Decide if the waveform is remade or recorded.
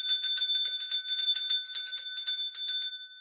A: recorded